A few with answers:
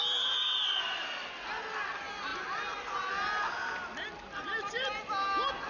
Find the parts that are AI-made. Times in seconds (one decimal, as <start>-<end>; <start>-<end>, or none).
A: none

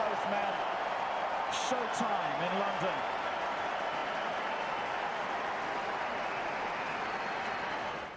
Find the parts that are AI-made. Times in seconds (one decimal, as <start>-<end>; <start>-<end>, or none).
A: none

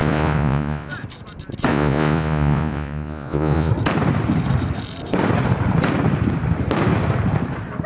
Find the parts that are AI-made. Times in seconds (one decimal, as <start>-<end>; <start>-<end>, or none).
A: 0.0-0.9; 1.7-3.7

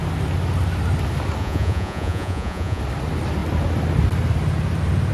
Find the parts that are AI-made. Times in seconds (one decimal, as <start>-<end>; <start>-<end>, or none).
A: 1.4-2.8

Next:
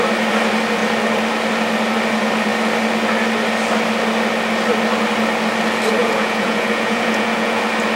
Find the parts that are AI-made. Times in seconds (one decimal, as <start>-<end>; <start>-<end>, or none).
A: 6.0-7.6

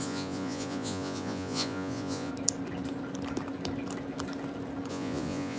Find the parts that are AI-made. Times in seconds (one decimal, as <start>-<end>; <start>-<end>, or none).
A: 0.0-2.3; 4.9-5.6